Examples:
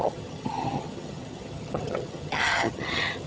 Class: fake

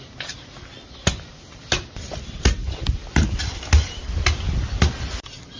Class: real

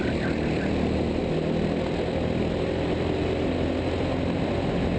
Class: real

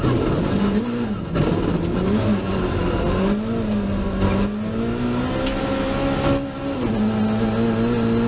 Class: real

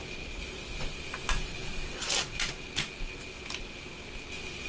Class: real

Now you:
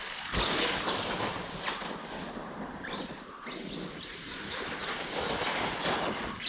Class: real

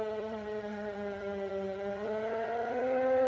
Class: fake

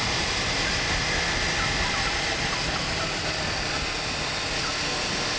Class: real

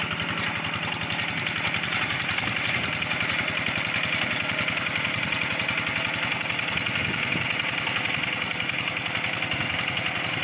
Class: real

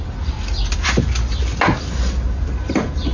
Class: real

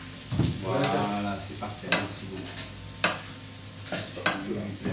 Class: real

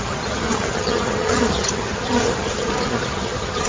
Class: fake